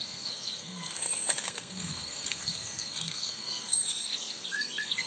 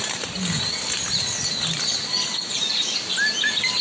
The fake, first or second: first